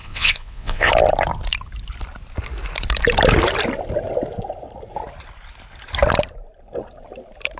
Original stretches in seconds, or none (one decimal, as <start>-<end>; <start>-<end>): 0.9-7.6